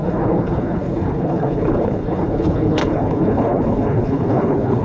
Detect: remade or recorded remade